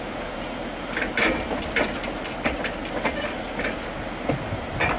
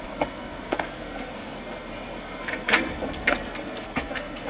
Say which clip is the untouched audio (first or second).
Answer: first